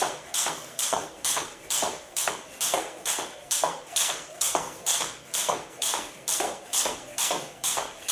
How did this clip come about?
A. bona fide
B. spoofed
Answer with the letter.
B